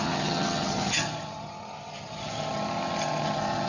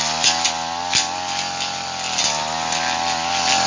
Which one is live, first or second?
second